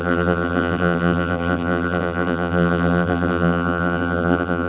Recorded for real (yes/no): no